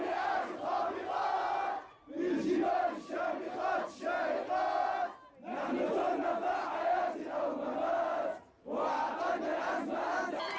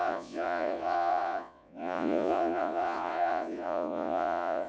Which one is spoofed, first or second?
second